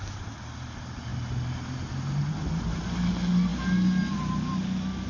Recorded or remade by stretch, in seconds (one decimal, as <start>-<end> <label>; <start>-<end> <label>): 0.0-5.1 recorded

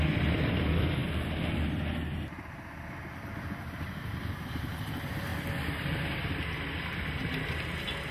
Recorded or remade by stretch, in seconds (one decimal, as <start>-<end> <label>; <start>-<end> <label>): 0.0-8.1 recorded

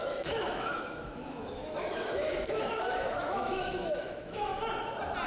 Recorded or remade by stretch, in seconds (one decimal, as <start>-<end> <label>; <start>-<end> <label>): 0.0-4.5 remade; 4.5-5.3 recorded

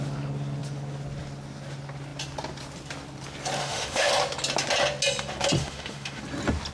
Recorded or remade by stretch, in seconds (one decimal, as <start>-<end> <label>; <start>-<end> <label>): 0.0-3.6 recorded; 3.6-4.1 remade; 4.1-5.6 recorded; 5.6-6.2 remade; 6.2-6.7 recorded